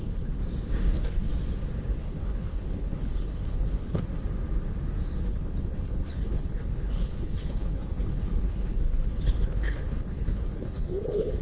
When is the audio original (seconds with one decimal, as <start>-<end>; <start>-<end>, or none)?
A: 0.4-0.9; 1.3-2.0; 4.0-5.2